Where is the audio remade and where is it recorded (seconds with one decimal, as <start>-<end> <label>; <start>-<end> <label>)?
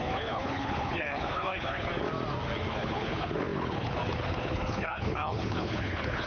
0.0-1.9 remade; 1.9-2.7 recorded; 2.7-6.3 remade